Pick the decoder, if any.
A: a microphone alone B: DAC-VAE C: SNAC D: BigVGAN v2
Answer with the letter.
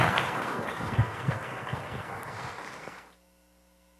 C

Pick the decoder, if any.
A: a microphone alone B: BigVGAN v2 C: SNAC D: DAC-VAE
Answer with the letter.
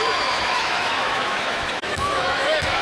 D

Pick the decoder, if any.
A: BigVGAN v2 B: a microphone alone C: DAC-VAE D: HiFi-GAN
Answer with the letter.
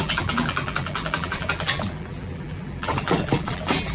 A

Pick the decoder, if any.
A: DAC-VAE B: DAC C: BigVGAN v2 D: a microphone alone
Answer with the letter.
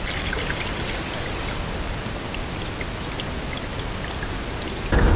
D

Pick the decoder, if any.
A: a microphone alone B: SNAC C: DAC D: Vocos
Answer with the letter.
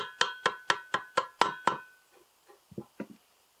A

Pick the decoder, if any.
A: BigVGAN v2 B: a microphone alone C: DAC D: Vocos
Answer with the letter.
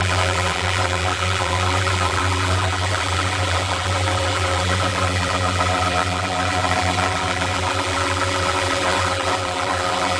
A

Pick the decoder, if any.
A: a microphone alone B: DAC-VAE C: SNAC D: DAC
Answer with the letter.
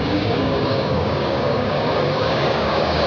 D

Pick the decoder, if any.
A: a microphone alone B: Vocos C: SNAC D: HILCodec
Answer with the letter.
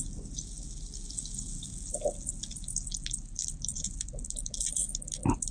A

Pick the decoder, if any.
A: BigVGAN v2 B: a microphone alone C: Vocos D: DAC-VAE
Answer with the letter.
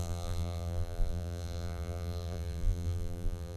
A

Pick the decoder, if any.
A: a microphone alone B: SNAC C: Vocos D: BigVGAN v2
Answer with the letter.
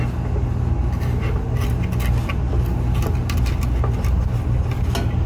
A